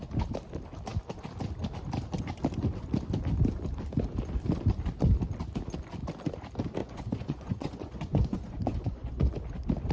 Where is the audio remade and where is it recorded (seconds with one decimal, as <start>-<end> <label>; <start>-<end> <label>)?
0.0-6.8 recorded; 6.8-9.3 remade; 9.3-9.9 recorded